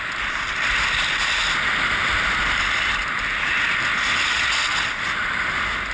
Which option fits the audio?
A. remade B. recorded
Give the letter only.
B